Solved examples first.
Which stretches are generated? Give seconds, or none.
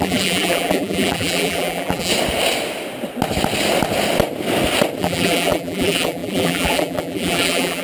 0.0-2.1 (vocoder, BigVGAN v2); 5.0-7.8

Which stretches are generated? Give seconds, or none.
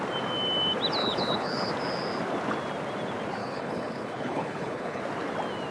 1.0-1.7 (codec, HILCodec); 3.4-5.0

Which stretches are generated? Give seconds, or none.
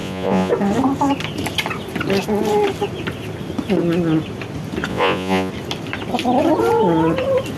0.0-0.5 (vocoder, Vocos); 4.9-5.5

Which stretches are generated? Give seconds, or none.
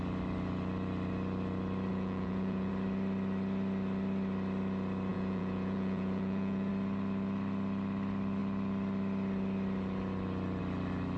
1.9-2.7 (vocoder, Vocos); 5.1-6.7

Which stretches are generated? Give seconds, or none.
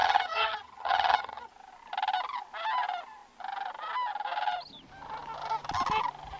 0.0-1.5 (vocoder, HiFi-GAN)